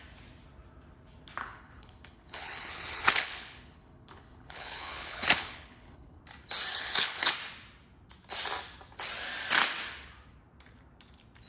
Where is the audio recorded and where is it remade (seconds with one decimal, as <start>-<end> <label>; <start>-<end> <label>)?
0.0-1.4 recorded; 1.4-6.2 remade; 6.2-6.7 recorded; 6.7-7.3 remade; 7.3-11.5 recorded